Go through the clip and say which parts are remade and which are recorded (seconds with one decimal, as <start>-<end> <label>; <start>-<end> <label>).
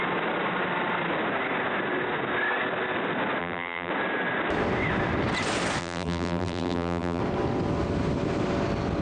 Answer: 0.0-3.4 recorded; 3.4-3.9 remade; 3.9-5.8 recorded; 5.8-7.2 remade; 7.2-9.0 recorded